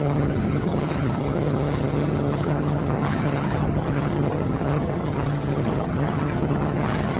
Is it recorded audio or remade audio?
remade